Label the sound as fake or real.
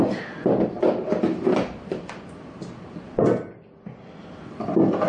real